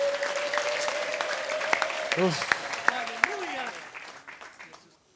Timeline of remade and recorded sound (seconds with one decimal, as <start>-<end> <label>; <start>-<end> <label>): 0.0-1.1 recorded; 1.1-4.2 remade; 4.2-5.2 recorded